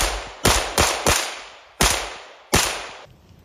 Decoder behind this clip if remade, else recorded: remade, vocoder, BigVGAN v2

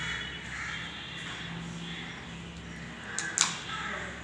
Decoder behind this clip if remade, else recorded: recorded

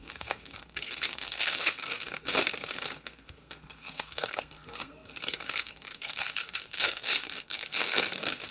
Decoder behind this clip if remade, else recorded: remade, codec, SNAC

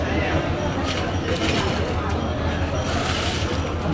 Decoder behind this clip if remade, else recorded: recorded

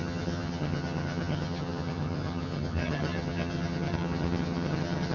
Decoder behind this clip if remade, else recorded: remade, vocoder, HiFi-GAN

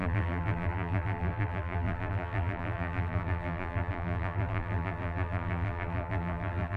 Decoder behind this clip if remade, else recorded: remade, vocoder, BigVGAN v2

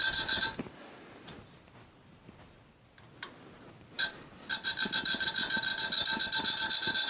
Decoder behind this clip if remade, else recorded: recorded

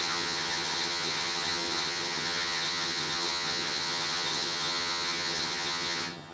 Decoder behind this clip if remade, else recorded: remade, vocoder, HiFi-GAN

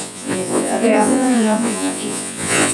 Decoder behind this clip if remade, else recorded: remade, vocoder, Vocos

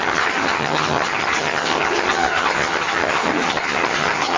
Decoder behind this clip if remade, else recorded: remade, vocoder, HiFi-GAN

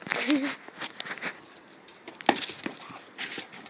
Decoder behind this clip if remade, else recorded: recorded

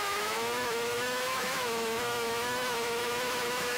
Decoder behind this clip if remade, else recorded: remade, autoencoder, DAC-VAE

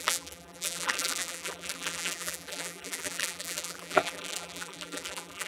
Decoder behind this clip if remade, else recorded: remade, vocoder, BigVGAN v2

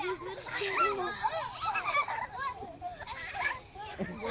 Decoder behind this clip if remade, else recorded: recorded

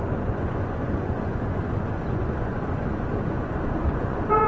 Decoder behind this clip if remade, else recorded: remade, vocoder, Vocos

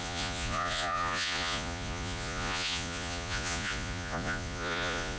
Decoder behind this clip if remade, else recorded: remade, vocoder, Vocos